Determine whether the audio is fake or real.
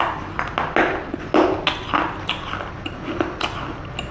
real